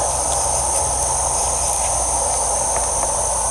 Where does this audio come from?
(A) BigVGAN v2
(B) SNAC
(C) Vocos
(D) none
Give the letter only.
D